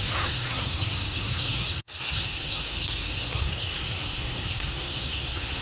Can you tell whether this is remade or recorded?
remade